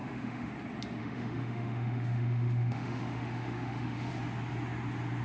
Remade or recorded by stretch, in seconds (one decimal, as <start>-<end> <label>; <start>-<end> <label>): 0.0-0.5 remade; 0.5-1.0 recorded; 1.0-4.1 remade; 4.1-5.2 recorded